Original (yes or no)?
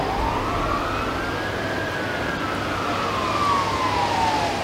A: yes